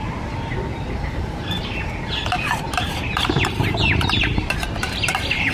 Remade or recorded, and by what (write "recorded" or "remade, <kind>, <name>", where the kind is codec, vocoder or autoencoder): recorded